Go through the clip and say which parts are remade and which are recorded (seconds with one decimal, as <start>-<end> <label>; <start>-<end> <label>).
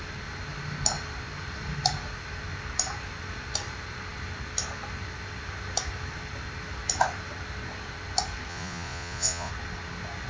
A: 0.0-8.5 recorded; 8.5-9.5 remade; 9.5-10.3 recorded